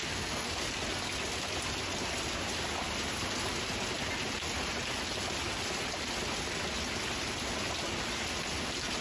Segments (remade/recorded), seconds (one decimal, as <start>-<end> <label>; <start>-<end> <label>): 0.0-0.5 remade; 0.5-9.0 recorded